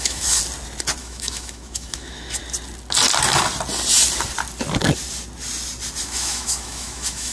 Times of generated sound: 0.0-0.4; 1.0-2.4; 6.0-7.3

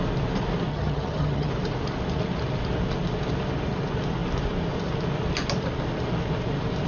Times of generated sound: 0.7-1.5

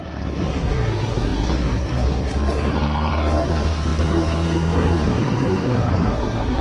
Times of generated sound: 0.0-6.6

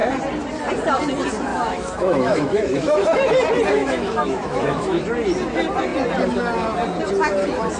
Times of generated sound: 1.5-3.3; 3.8-5.0

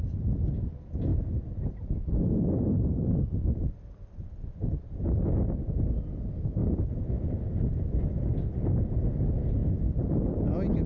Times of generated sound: 1.1-5.3; 6.6-9.0; 9.6-10.3